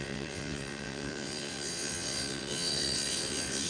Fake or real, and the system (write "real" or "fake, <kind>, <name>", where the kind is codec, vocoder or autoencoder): fake, vocoder, WaveNeXt